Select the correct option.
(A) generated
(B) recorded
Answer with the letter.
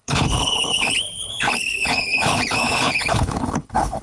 A